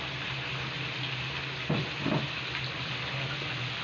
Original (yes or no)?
yes